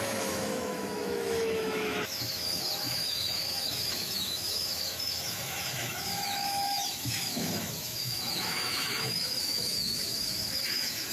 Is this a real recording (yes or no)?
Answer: no